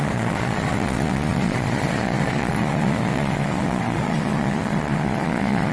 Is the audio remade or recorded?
remade